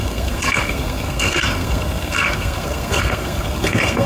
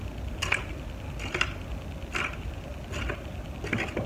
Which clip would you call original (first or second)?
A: second